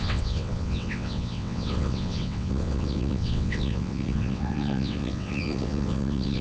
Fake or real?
fake